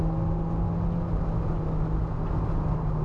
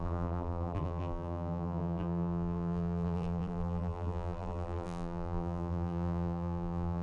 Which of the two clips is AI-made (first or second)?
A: second